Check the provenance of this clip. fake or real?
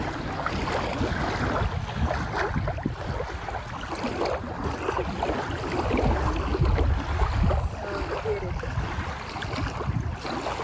real